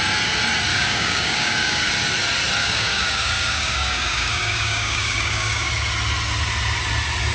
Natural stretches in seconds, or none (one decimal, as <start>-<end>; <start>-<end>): 0.0-0.7; 1.9-2.6; 5.7-7.3